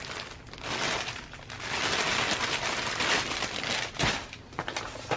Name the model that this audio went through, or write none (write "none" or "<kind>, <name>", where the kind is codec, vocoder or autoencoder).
none